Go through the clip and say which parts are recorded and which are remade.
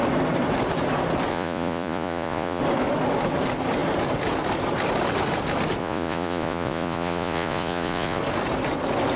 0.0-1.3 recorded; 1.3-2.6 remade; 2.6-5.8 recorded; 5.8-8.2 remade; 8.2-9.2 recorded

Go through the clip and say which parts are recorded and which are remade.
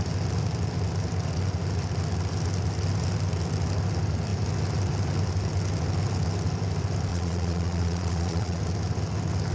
0.0-7.1 recorded; 7.1-8.6 remade; 8.6-9.5 recorded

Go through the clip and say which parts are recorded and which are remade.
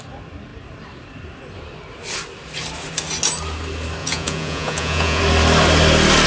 0.0-4.0 recorded; 4.0-5.2 remade; 5.2-6.3 recorded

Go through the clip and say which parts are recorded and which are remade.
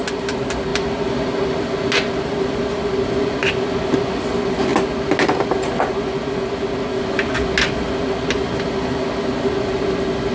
0.0-10.3 recorded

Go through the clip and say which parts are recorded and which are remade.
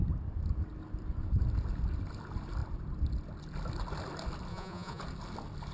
0.0-4.5 recorded; 4.5-5.0 remade; 5.0-5.7 recorded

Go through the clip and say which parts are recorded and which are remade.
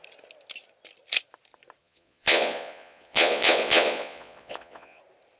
0.0-1.8 recorded; 1.8-5.0 remade; 5.0-5.4 recorded